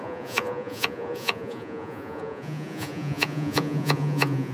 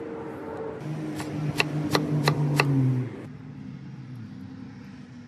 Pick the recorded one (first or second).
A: second